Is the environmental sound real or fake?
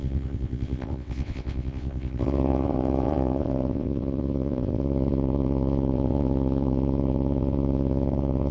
fake